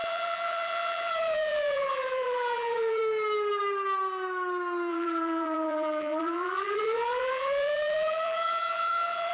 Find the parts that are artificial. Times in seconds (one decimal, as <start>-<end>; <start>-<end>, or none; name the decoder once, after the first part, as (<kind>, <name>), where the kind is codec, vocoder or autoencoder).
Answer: 0.0-3.0 (vocoder, BigVGAN v2); 4.9-9.3